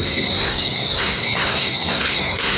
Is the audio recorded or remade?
remade